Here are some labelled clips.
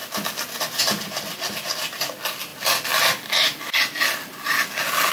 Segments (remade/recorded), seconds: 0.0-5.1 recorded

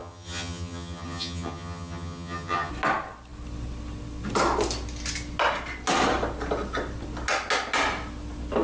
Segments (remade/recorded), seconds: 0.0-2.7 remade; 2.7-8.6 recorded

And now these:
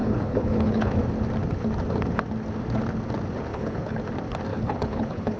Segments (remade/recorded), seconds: 0.0-0.9 remade; 0.9-3.5 recorded; 3.5-4.0 remade; 4.0-4.5 recorded; 4.5-5.4 remade

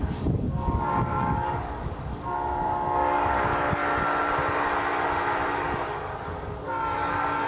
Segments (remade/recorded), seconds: 0.0-3.8 remade; 3.8-5.5 recorded; 5.5-7.5 remade

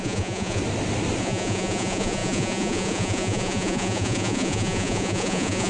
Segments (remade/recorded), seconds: 0.0-0.6 remade; 0.6-1.2 recorded; 1.2-5.7 remade

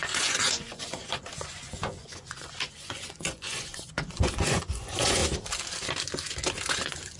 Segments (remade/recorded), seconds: 0.0-5.2 remade; 5.2-6.7 recorded; 6.7-7.2 remade

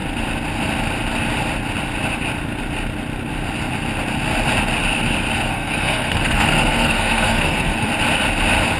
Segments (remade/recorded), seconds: 0.0-5.5 recorded; 5.5-7.9 remade; 7.9-8.8 recorded

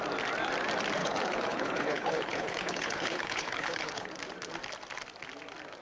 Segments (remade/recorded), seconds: 0.0-1.0 recorded; 1.0-4.1 remade; 4.1-5.8 recorded